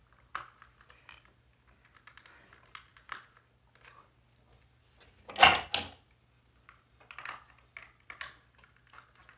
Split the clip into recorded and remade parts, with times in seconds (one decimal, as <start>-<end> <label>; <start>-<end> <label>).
0.0-9.4 recorded